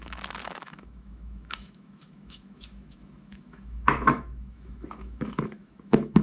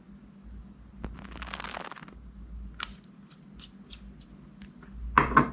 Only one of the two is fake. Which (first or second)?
first